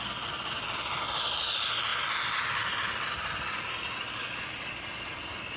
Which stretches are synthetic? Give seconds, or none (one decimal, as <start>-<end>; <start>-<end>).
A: none